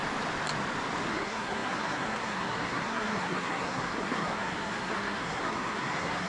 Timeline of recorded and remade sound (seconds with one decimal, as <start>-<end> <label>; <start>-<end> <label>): 0.0-1.1 recorded; 1.1-6.3 remade

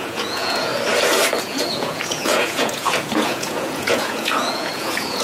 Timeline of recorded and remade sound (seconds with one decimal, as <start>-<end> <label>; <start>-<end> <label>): 0.0-0.7 remade; 0.7-1.4 recorded; 1.4-5.2 remade

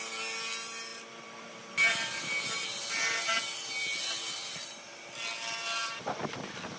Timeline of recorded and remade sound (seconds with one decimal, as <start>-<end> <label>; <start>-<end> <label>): 0.0-0.9 recorded; 0.9-4.7 remade; 4.7-5.8 recorded; 5.8-6.8 remade

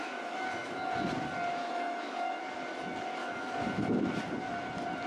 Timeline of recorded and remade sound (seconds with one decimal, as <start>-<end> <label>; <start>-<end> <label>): 0.0-0.7 remade; 0.7-1.6 recorded; 1.6-2.4 remade; 2.4-3.2 recorded; 3.2-3.9 remade; 3.9-5.1 recorded

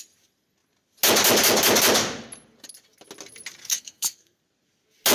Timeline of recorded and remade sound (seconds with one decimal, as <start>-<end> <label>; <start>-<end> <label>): 0.0-3.6 recorded; 3.6-4.4 remade; 4.4-5.1 recorded

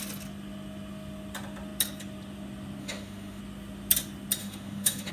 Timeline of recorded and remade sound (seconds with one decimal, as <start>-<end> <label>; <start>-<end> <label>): 0.0-2.8 recorded; 2.8-3.4 remade; 3.4-4.4 recorded; 4.4-5.1 remade